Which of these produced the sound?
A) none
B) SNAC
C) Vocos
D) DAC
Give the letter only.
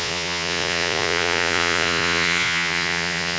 C